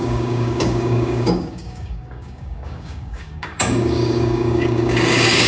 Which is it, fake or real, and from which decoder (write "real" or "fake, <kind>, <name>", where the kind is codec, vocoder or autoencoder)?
fake, codec, DAC